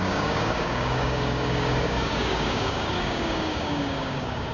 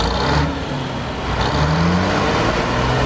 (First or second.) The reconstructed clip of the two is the first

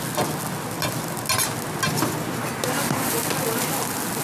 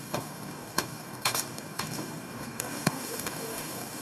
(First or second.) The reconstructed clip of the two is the second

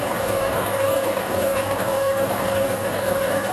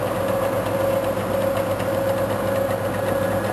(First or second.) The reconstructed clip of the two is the first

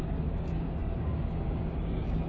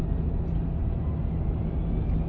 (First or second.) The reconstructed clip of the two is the first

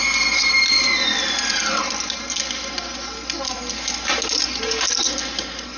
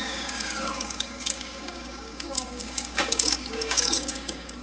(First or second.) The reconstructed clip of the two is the second